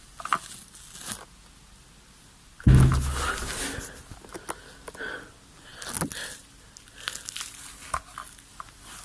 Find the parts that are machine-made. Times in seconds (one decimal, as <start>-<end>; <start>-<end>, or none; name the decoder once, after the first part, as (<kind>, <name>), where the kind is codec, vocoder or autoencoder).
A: none